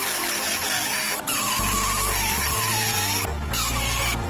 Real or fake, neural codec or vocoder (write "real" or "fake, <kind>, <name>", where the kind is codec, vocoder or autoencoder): real